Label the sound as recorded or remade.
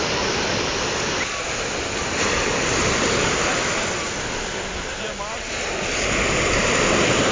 recorded